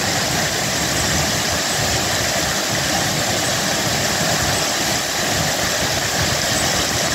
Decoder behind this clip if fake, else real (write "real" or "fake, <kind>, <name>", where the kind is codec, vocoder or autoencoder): real